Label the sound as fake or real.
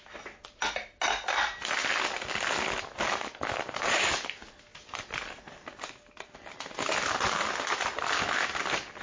real